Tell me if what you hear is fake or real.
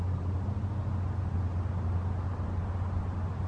real